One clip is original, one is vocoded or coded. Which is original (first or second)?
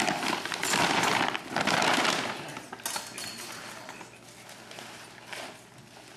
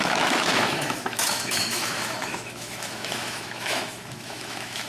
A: first